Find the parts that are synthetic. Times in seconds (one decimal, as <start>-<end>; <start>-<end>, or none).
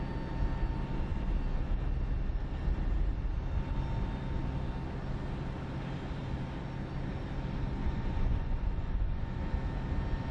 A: 7.8-9.5